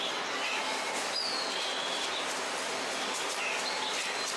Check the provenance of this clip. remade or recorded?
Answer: recorded